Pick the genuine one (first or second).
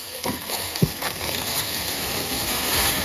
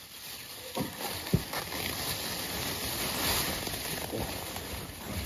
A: second